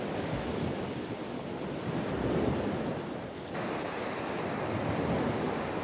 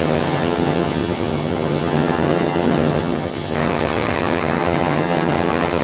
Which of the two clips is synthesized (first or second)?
second